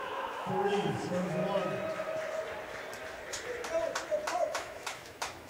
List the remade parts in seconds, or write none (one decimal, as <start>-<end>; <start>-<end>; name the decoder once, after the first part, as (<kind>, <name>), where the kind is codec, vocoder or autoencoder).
0.0-1.4 (autoencoder, DAC-VAE); 4.4-5.5